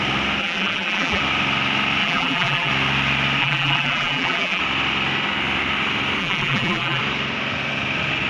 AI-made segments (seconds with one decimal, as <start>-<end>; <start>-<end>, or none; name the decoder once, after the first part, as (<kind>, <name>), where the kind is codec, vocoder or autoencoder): 0.4-1.2 (vocoder, BigVGAN v2); 2.0-2.7; 3.4-4.6; 6.2-7.0